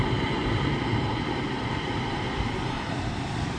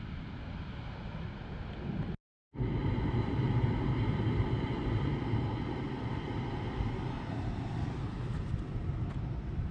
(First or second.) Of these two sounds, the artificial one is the first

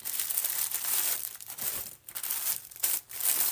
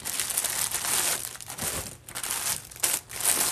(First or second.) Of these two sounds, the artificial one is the first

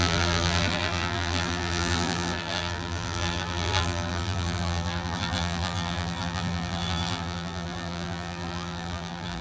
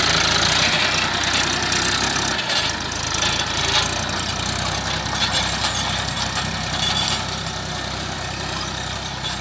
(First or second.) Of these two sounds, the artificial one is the first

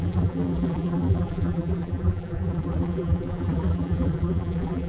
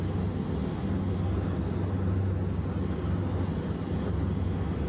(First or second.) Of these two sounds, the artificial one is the first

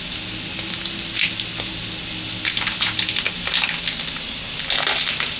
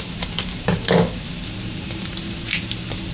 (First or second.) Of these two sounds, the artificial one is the second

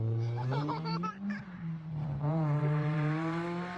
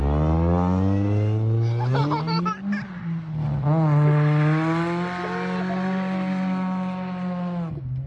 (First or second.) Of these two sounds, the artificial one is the first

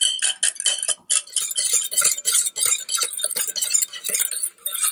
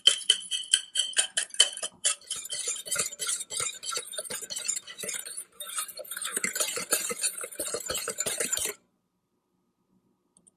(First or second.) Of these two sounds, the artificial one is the second